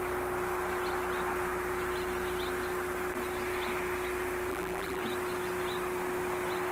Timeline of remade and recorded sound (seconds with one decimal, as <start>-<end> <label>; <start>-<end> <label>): 0.0-4.5 recorded; 4.5-5.0 remade; 5.0-6.7 recorded

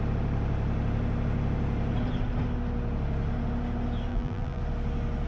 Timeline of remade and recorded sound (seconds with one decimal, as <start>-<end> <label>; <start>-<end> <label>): 0.0-4.1 recorded; 4.1-4.6 remade; 4.6-5.3 recorded

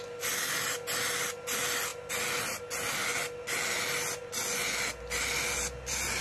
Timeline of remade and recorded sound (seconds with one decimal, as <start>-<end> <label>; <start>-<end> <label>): 0.0-6.2 recorded

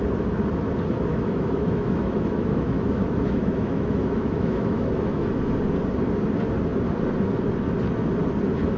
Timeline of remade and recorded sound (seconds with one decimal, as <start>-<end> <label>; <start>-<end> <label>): 0.0-1.1 recorded; 1.1-5.4 remade; 5.4-8.8 recorded

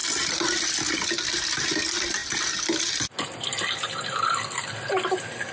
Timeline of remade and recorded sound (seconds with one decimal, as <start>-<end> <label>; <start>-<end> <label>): 0.0-5.5 recorded

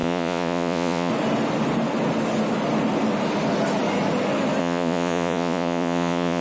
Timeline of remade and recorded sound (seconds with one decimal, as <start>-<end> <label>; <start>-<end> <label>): 0.0-1.1 remade; 1.1-4.6 recorded; 4.6-6.4 remade